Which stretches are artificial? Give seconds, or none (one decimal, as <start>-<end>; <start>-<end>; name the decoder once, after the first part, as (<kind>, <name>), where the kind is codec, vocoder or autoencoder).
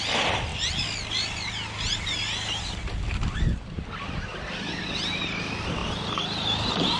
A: none